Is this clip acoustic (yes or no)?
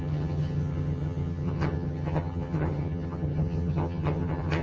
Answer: no